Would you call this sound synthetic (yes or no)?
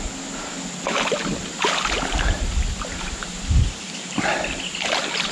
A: no